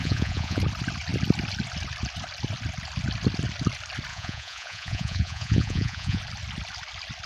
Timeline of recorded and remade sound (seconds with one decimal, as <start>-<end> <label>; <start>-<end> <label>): 0.0-0.6 remade; 0.6-4.1 recorded; 4.1-6.2 remade; 6.2-7.3 recorded